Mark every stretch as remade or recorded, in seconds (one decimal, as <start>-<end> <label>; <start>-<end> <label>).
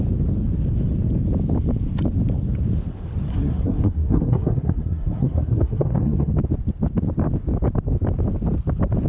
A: 0.0-3.3 recorded; 3.3-6.3 remade; 6.3-9.1 recorded